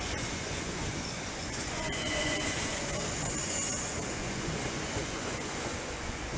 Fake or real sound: fake